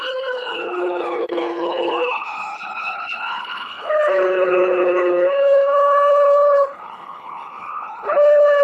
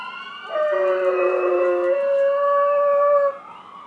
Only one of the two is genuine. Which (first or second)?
second